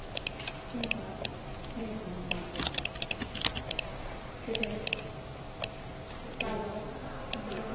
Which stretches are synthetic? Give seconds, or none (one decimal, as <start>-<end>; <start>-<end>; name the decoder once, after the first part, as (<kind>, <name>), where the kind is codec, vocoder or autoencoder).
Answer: 1.3-2.7 (vocoder, BigVGAN v2); 3.2-4.5